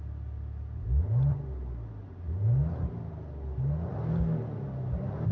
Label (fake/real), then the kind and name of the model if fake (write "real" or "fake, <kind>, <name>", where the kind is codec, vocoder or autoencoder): real